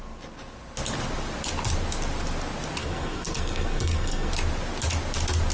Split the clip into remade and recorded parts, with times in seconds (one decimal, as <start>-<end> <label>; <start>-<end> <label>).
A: 0.0-2.8 recorded; 2.8-4.3 remade; 4.3-5.5 recorded